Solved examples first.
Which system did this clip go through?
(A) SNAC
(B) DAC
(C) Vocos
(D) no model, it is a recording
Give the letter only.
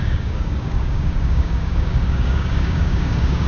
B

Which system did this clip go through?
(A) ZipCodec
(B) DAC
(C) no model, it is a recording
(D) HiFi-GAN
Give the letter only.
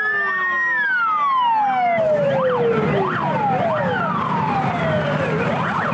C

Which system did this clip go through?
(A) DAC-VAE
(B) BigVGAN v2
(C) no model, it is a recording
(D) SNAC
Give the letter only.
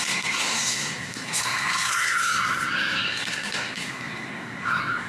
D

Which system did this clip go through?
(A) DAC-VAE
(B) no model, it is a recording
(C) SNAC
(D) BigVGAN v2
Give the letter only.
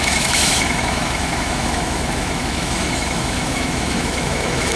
A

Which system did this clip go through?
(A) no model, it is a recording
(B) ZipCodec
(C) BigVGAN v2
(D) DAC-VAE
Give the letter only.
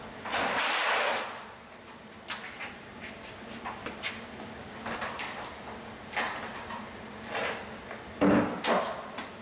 A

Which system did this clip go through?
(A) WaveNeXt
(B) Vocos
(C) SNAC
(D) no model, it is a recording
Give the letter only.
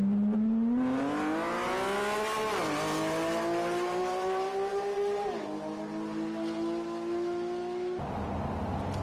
D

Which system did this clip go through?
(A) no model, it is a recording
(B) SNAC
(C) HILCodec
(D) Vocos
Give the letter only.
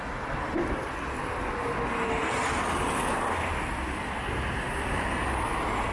A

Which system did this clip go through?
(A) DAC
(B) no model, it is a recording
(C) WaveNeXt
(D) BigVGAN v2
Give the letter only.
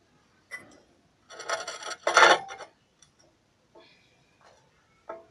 B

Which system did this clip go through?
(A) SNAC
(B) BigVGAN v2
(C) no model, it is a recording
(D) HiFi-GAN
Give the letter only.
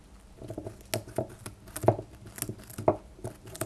C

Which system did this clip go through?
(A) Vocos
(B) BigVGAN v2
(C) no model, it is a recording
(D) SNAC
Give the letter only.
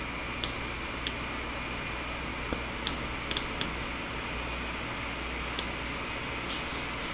C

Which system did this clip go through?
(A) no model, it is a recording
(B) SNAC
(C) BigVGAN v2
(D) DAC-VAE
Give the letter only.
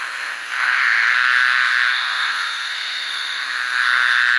B